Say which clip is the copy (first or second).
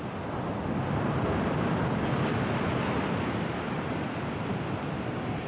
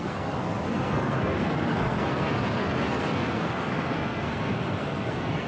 second